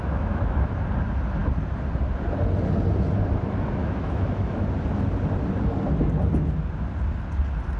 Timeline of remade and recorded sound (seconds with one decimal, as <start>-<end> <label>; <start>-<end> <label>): 0.0-0.7 remade; 0.7-3.8 recorded; 3.8-4.7 remade; 4.7-7.8 recorded